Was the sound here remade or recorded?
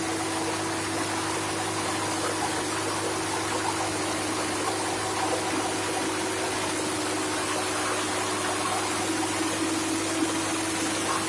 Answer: recorded